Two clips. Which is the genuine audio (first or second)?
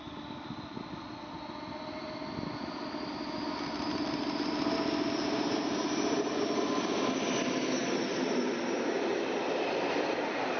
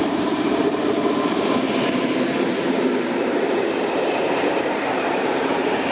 first